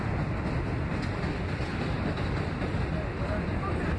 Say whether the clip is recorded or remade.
recorded